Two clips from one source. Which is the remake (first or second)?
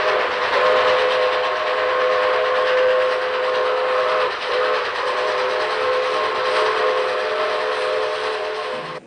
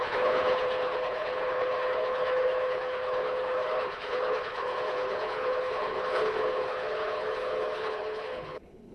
second